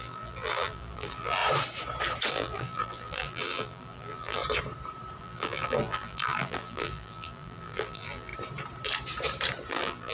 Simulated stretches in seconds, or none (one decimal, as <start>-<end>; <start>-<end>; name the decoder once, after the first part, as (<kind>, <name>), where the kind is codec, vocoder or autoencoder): 0.0-1.4 (vocoder, BigVGAN v2); 2.3-4.4; 5.2-8.3; 9.7-10.1